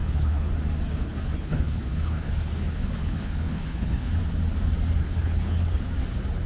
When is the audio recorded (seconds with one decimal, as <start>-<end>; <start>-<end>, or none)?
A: 0.5-0.9; 4.2-5.0; 5.8-6.5

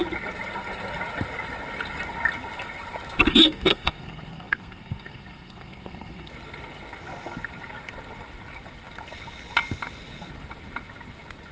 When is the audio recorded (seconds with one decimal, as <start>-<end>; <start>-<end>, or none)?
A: 0.0-3.3; 6.3-11.5